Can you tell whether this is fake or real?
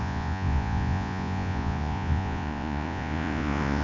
fake